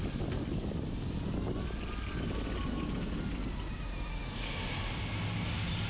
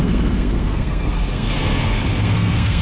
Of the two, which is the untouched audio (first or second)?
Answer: first